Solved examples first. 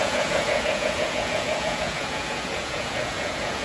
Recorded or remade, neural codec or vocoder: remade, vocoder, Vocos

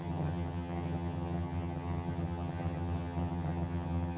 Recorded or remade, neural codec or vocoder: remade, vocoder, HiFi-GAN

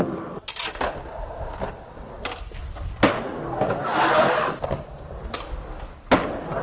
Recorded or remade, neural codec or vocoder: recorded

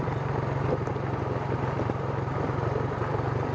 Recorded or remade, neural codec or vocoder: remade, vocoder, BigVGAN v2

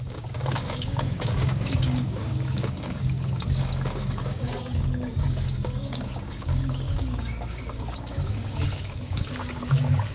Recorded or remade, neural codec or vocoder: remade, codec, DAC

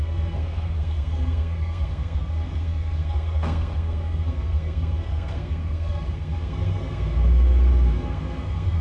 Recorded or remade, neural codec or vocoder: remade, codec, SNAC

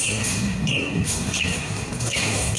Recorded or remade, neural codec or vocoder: remade, codec, SNAC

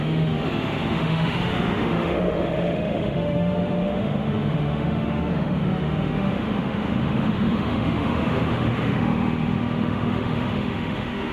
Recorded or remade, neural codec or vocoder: remade, autoencoder, DAC-VAE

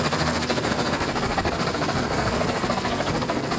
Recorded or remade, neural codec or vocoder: remade, codec, SNAC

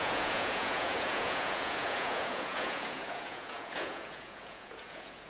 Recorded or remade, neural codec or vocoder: remade, vocoder, Vocos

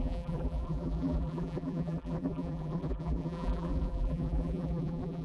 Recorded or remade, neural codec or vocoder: remade, vocoder, BigVGAN v2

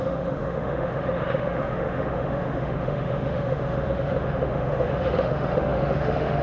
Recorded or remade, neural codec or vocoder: remade, autoencoder, DAC-VAE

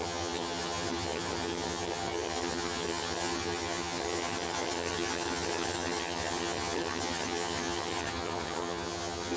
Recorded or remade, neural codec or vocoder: remade, vocoder, HiFi-GAN